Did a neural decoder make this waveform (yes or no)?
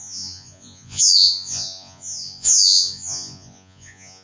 yes